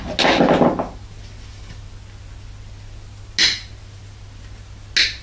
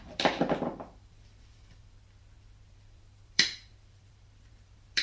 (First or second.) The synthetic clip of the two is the second